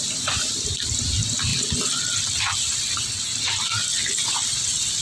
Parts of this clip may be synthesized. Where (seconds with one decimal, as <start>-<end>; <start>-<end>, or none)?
none